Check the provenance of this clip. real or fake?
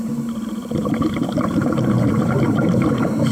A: fake